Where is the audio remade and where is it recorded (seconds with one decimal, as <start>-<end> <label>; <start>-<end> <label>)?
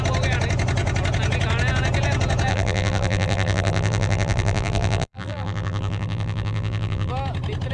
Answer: 0.0-2.5 recorded; 2.5-7.1 remade; 7.1-7.7 recorded